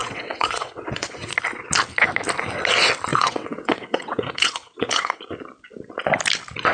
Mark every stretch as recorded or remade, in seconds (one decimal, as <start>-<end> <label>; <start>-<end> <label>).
0.0-1.3 remade; 1.3-3.1 recorded; 3.1-5.2 remade; 5.2-6.7 recorded